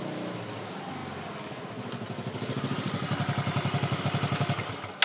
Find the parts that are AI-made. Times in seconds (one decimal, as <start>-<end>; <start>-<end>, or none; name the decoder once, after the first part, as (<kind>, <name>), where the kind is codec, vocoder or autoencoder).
none